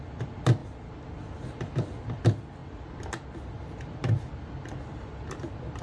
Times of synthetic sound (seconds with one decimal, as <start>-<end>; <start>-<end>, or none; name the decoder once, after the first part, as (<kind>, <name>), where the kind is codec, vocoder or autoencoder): none